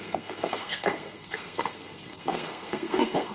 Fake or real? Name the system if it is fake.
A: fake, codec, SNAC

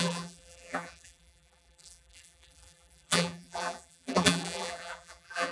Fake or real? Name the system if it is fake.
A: fake, vocoder, BigVGAN v2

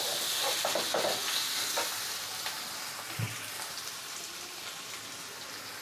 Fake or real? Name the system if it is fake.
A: real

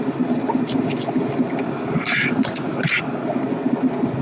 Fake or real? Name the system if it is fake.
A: real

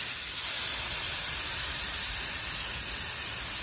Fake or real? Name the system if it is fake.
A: real